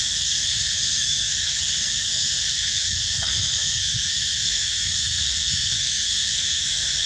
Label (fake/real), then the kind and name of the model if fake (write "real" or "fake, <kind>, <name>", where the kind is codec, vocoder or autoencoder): fake, codec, SNAC